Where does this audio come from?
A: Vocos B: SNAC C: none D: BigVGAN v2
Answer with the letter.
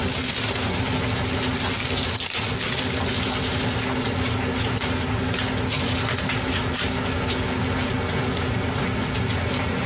C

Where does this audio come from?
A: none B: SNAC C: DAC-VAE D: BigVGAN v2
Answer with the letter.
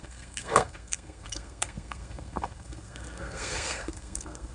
B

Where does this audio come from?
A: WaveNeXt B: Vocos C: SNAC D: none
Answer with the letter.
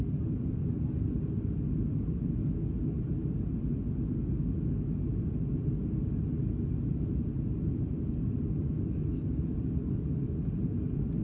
D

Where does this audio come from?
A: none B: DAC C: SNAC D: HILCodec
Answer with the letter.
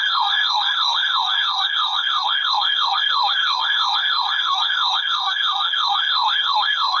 C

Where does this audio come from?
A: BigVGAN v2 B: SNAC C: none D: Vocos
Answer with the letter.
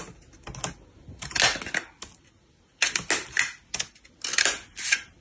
C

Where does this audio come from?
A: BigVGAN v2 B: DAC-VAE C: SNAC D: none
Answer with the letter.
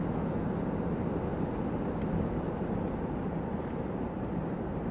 D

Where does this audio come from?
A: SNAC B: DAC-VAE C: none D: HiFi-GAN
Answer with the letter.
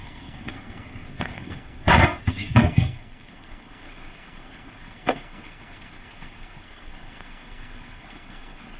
A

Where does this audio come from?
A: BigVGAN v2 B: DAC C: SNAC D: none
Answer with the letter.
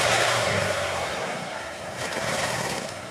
C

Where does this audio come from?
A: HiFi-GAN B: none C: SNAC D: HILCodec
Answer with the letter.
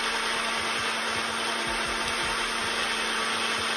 B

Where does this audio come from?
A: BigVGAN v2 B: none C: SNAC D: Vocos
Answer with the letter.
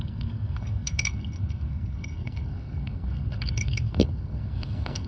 C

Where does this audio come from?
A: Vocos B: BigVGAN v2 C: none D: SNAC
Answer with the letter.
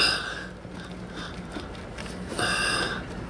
C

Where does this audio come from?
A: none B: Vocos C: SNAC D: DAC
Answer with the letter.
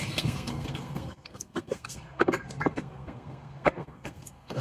C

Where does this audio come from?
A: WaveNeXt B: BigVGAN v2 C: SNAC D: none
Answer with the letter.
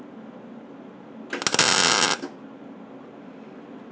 D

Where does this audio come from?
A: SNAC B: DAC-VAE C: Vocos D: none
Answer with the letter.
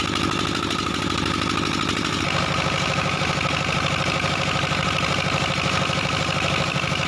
D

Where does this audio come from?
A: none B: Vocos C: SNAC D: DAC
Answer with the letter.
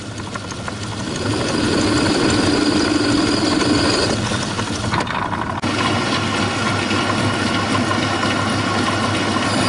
A